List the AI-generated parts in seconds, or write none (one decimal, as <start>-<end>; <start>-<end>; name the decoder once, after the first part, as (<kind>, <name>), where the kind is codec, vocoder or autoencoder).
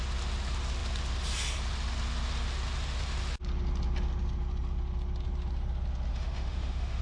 6.1-7.0 (autoencoder, DAC-VAE)